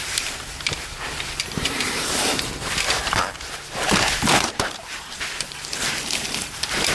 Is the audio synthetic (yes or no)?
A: yes